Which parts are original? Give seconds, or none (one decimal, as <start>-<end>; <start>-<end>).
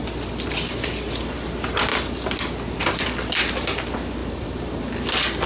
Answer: 0.0-4.2; 4.8-5.5